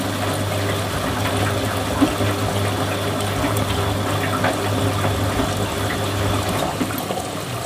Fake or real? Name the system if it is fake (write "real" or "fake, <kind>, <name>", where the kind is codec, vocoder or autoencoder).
real